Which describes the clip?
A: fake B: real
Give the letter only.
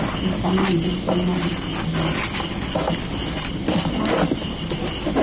B